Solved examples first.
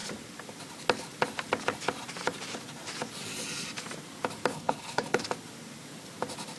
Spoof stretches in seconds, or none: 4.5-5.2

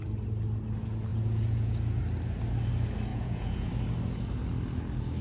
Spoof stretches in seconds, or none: 1.1-2.0; 3.1-3.7

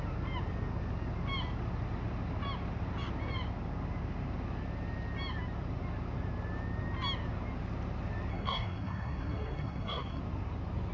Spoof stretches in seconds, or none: 8.3-10.2

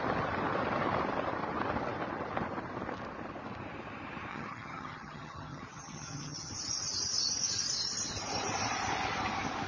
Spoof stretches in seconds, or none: 4.3-6.5

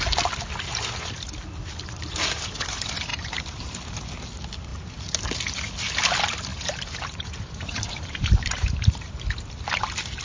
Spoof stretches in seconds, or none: 3.1-3.7; 6.5-9.1

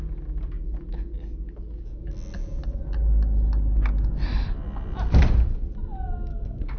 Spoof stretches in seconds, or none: 6.3-6.8

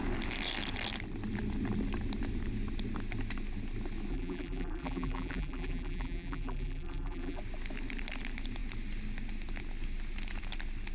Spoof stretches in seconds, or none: 4.1-7.4